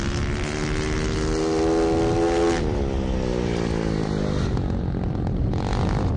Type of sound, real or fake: real